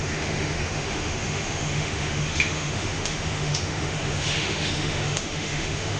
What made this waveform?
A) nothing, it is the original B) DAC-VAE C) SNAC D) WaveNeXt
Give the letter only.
B